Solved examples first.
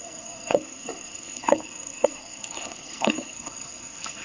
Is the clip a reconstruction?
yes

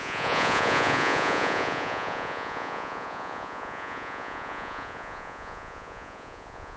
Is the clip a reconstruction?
yes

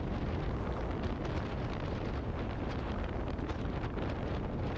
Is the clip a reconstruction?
no